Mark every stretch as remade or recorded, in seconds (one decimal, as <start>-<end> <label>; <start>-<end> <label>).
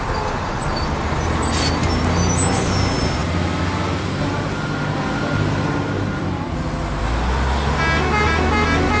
0.0-9.0 recorded